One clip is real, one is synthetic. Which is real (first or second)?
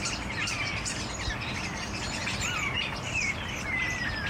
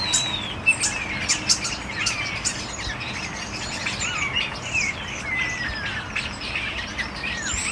second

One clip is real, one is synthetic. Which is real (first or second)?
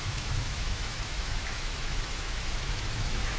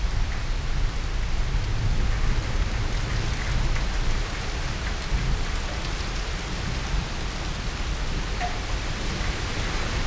second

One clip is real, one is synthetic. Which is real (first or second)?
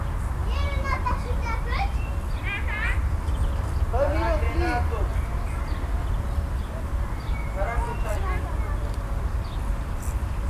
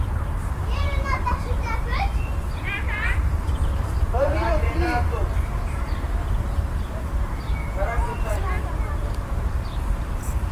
first